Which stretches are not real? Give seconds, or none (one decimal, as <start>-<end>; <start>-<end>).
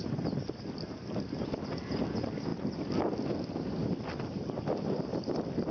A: none